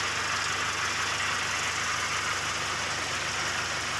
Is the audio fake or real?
real